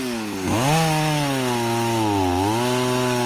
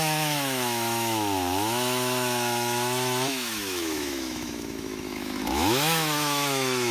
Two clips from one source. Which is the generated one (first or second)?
second